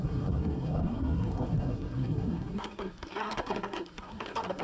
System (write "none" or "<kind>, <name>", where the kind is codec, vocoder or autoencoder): codec, SNAC